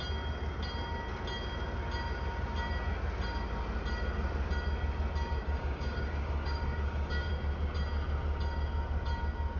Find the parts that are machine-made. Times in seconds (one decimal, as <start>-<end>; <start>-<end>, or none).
5.4-7.3